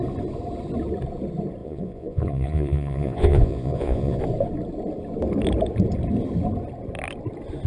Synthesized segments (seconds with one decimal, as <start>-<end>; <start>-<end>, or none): 1.6-4.2